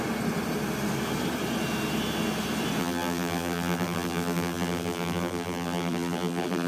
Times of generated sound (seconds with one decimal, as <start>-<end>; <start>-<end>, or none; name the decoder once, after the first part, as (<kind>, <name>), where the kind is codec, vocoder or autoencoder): 2.8-6.7 (vocoder, BigVGAN v2)